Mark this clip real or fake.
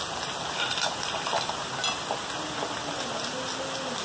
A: real